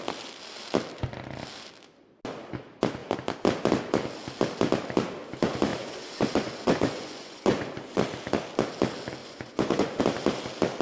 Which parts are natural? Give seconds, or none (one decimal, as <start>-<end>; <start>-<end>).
0.0-5.7; 8.0-9.2; 10.0-10.8